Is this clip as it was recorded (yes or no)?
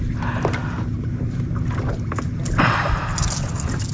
yes